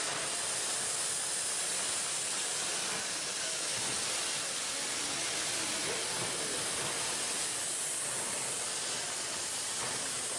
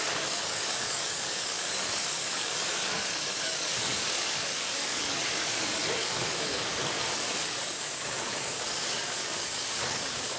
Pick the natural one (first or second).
first